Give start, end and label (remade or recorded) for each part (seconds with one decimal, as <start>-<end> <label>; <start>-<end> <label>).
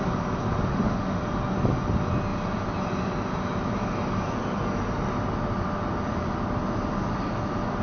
0.0-0.7 recorded; 0.7-1.2 remade; 1.2-7.8 recorded